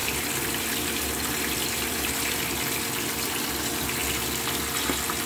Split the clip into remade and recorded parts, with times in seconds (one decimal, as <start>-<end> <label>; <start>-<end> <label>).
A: 0.0-2.4 remade; 2.4-5.3 recorded